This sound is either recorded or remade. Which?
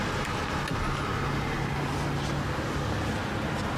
recorded